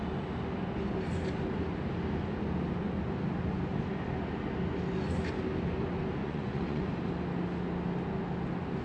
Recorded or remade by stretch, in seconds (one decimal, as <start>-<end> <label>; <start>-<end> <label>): 0.0-6.2 recorded; 6.2-6.9 remade; 6.9-8.8 recorded